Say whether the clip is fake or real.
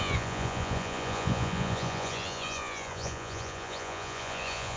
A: fake